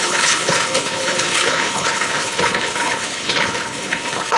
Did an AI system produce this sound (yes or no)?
yes